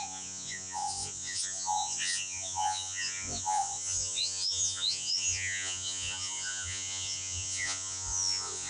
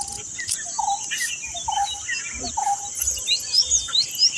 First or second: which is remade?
first